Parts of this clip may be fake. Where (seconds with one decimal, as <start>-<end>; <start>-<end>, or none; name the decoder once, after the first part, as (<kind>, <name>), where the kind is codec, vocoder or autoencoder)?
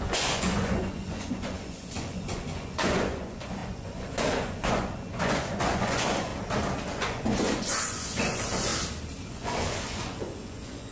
0.0-6.3 (vocoder, Vocos); 6.9-8.7; 9.3-10.9